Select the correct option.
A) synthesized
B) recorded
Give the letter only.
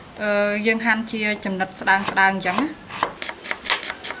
B